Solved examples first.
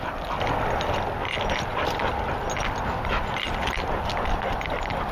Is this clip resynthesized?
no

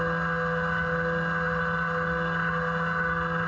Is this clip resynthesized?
no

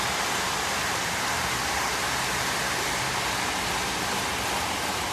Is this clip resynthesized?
no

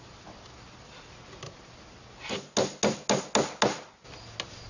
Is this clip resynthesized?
no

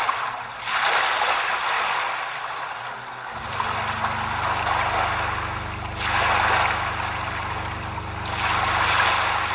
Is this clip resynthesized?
no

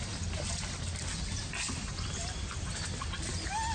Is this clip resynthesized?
no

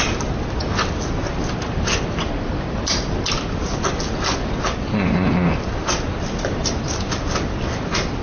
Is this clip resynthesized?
no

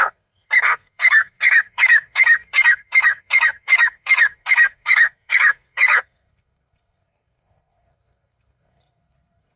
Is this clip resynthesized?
yes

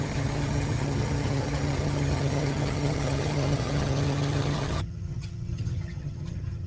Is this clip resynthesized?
yes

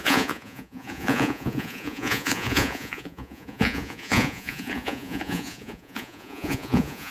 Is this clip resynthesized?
yes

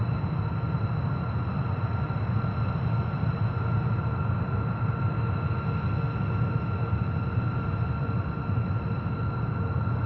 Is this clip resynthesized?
no